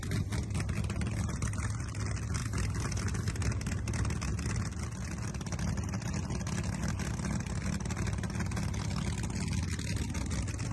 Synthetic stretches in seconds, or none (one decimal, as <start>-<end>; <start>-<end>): none

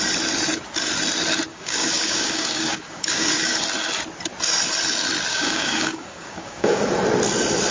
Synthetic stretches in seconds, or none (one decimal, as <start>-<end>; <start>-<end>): 1.5-3.6; 5.3-6.8